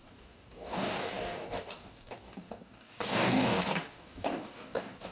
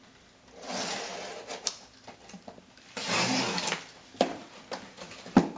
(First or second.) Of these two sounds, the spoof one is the first